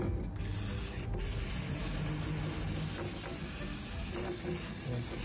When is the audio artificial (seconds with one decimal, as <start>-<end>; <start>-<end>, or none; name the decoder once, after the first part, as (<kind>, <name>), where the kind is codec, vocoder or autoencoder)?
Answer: none